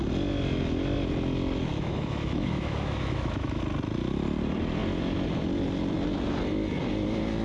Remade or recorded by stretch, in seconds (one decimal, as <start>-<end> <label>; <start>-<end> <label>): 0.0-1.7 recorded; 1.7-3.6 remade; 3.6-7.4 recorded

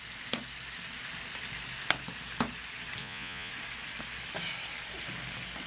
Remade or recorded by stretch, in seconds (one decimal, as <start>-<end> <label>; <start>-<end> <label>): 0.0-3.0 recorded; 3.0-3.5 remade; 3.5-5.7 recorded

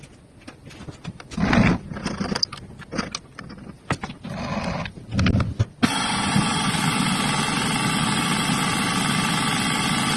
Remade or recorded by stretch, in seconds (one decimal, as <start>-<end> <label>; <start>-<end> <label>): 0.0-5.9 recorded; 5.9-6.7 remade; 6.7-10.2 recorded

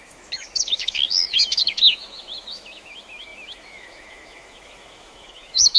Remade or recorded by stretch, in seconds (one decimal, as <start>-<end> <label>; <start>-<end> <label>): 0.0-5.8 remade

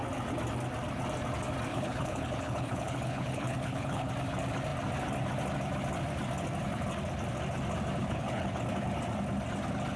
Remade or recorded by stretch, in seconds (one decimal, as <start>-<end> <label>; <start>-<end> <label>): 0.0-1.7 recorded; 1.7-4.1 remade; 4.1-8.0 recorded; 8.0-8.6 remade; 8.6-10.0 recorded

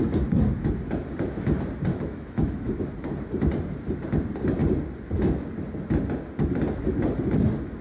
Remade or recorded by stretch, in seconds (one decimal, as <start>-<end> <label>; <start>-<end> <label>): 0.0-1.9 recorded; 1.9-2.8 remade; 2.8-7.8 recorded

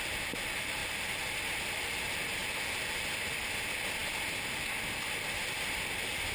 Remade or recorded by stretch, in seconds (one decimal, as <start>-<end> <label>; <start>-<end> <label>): 0.0-6.3 recorded

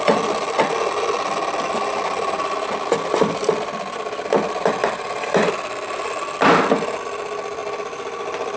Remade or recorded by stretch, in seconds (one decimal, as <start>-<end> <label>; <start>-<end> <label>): 0.0-4.8 recorded; 4.8-5.5 remade; 5.5-8.6 recorded